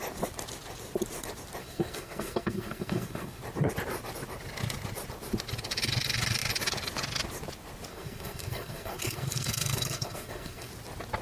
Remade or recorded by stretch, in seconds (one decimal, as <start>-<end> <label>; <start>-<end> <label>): 0.0-1.6 recorded; 1.6-3.4 remade; 3.4-7.9 recorded; 7.9-10.7 remade; 10.7-11.2 recorded